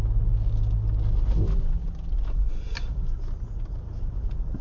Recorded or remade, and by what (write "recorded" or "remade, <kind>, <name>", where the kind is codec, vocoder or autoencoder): recorded